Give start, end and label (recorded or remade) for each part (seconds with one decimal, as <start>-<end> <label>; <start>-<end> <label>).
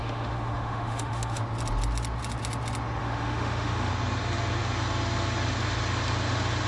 0.0-1.4 remade; 1.4-3.0 recorded; 3.0-3.9 remade; 3.9-6.7 recorded